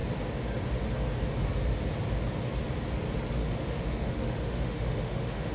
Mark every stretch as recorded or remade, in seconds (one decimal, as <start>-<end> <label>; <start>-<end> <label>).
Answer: 0.0-3.3 recorded; 3.3-5.5 remade